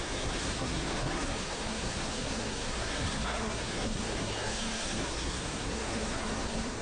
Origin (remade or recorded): remade